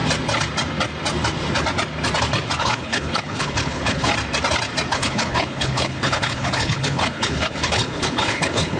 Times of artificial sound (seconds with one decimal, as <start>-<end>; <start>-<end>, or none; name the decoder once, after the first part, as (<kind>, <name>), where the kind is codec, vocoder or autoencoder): 2.6-4.1 (codec, HILCodec); 4.9-8.8